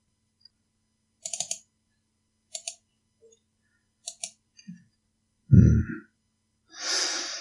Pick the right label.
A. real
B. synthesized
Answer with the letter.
A